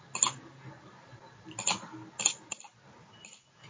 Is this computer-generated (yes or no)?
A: no